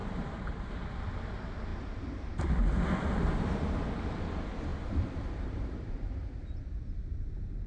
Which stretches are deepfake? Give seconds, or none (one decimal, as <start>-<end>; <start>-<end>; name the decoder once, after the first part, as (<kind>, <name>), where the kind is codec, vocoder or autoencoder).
0.0-0.8 (vocoder, BigVGAN v2); 4.7-6.3